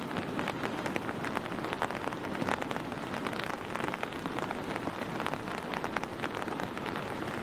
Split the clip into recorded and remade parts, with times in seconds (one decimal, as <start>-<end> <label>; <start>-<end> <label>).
0.0-6.1 recorded; 6.1-6.6 remade; 6.6-7.4 recorded